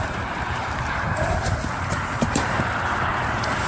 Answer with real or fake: fake